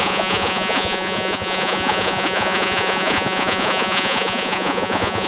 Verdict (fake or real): fake